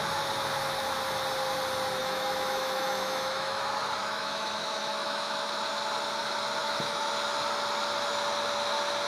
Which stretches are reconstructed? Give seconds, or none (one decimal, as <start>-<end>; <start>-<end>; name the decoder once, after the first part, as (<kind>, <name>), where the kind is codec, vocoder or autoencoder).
2.0-3.6 (autoencoder, DAC-VAE); 4.0-5.7; 6.6-7.1